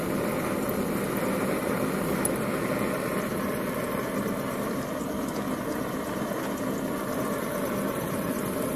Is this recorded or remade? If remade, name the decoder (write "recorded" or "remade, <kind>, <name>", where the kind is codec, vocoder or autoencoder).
recorded